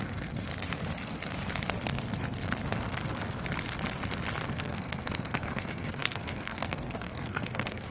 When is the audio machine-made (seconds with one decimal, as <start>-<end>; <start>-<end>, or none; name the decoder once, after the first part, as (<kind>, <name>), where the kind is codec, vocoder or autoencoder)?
0.0-0.5 (codec, SNAC); 4.5-7.9